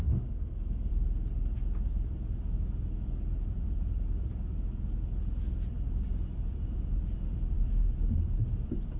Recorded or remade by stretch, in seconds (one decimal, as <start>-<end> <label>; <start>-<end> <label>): 0.0-0.9 remade; 0.9-9.0 recorded